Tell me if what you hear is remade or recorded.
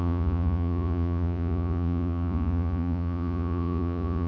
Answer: remade